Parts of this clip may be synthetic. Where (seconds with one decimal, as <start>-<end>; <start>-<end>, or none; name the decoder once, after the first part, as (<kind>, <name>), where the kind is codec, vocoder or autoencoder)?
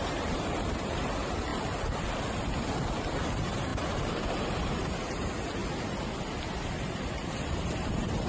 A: 0.0-1.5 (vocoder, BigVGAN v2); 3.3-5.6; 6.5-8.3